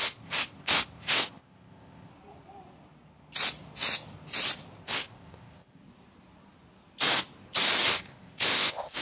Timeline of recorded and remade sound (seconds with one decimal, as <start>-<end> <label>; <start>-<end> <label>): 0.0-2.1 remade; 2.1-4.8 recorded; 4.8-5.8 remade; 5.8-7.9 recorded; 7.9-9.0 remade

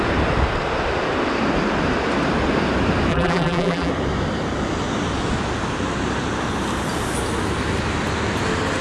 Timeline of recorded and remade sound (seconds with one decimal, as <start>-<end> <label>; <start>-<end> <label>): 0.0-3.1 recorded; 3.1-3.9 remade; 3.9-8.8 recorded

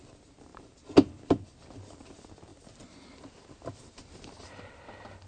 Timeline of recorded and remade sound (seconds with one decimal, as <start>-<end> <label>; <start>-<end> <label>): 0.0-5.3 recorded

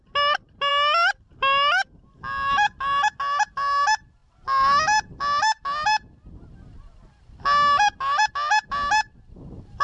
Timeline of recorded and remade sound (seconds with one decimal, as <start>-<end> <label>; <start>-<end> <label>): 0.0-9.8 recorded

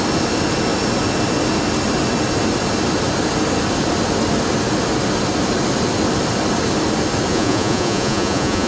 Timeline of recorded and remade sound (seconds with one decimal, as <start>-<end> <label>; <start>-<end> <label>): 0.0-7.3 recorded; 7.3-8.7 remade